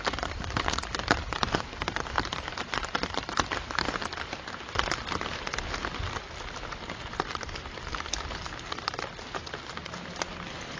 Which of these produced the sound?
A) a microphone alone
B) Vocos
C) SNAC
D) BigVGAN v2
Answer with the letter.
A